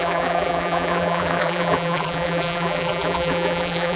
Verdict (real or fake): fake